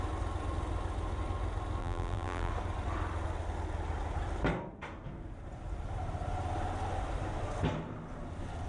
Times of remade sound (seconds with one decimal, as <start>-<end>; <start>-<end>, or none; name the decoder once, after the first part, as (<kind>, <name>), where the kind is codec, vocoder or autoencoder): 1.8-2.5 (vocoder, BigVGAN v2)